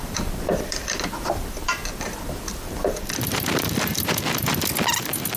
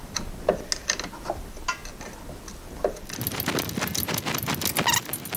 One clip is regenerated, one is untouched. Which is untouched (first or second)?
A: second